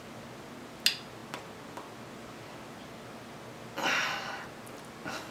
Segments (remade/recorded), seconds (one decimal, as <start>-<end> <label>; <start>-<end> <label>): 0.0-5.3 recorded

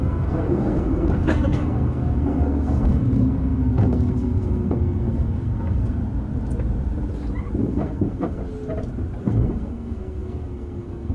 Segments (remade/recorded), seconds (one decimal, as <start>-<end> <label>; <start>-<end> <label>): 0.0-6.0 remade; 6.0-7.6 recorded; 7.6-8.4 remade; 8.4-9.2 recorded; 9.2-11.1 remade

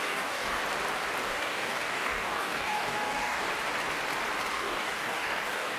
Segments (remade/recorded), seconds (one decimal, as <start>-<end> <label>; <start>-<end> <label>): 0.0-0.6 remade; 0.6-1.2 recorded; 1.2-3.5 remade; 3.5-4.5 recorded; 4.5-5.8 remade